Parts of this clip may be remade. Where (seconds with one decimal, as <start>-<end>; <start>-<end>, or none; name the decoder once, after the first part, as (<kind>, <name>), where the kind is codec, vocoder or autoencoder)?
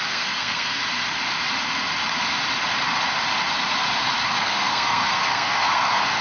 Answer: 0.0-0.8 (codec, SNAC); 4.4-6.2